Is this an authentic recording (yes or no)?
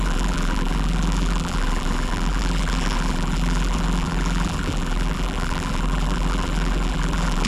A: no